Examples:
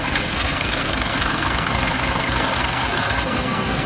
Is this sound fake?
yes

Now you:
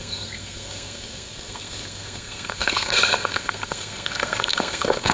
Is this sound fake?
yes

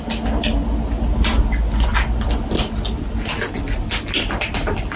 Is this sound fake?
no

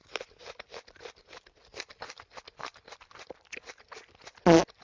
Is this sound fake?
no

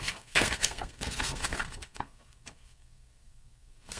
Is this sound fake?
yes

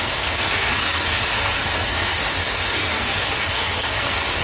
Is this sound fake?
yes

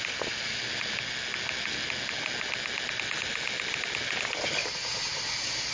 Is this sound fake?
no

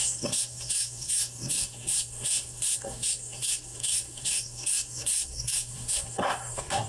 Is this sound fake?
yes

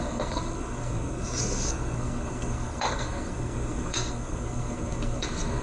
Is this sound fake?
yes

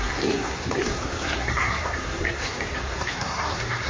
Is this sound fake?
yes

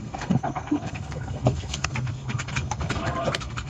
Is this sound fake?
yes